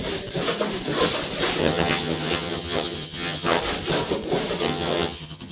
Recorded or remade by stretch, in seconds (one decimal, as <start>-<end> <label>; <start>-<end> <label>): 0.0-1.6 recorded; 1.6-3.6 remade; 3.6-4.6 recorded; 4.6-5.5 remade